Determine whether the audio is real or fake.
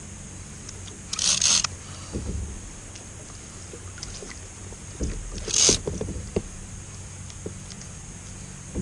real